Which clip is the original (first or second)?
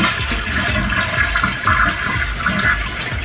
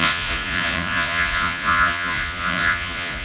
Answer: first